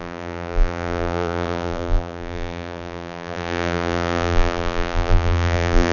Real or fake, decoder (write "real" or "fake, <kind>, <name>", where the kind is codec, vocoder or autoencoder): fake, vocoder, BigVGAN v2